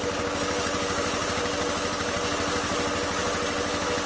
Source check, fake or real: real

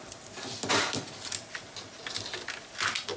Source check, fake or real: real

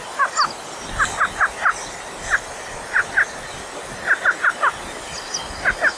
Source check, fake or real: real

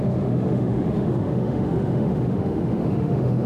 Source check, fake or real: fake